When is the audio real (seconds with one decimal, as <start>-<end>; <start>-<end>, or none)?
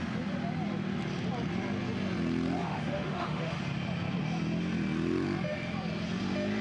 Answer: 0.0-2.6; 3.6-6.6